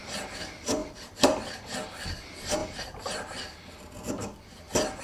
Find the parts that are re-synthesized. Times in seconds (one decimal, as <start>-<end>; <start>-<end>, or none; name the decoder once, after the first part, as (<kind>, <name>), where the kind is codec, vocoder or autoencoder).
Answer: none